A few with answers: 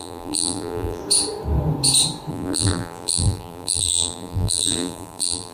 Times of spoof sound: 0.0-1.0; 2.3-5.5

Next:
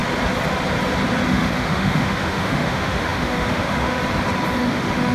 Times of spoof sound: 1.3-4.0; 4.6-5.1

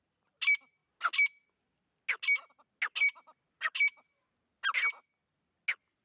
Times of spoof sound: none

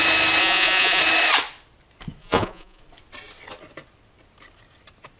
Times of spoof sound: 0.4-1.0; 2.2-2.8

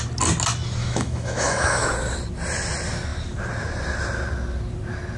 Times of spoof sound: 0.8-1.9

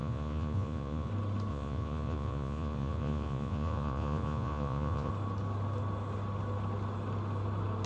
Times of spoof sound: 0.0-1.1; 1.5-5.1

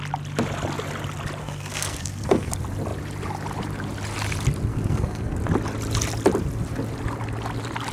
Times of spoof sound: 1.4-2.5; 4.7-5.4

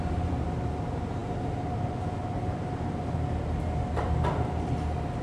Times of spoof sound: none